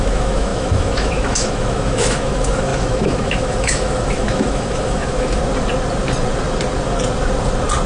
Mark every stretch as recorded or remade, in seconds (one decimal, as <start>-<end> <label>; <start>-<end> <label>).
0.0-5.4 remade; 5.4-7.9 recorded